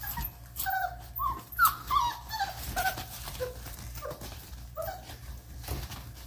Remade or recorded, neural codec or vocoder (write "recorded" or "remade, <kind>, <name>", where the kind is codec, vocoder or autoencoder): recorded